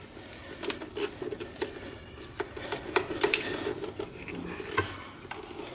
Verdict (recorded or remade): recorded